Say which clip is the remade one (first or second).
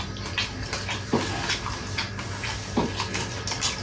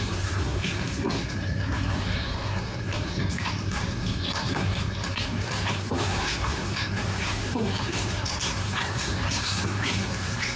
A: second